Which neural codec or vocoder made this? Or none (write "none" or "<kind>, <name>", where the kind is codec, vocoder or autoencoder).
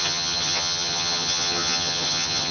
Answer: vocoder, HiFi-GAN